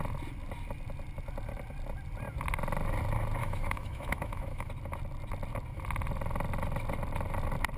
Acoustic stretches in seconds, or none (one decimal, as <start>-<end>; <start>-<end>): 0.0-3.4; 4.7-7.8

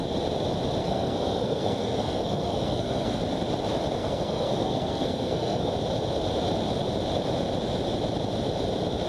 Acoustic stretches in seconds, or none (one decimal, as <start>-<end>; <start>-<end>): 0.0-0.8; 3.2-4.0; 5.7-9.1